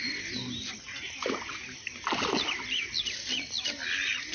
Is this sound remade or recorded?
remade